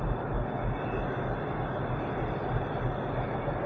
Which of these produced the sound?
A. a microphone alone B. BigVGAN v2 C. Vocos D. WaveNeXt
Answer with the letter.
A